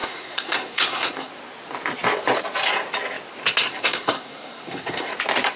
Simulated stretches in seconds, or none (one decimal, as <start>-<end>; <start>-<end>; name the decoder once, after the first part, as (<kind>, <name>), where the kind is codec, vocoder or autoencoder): 0.0-1.3 (codec, SNAC); 3.7-5.1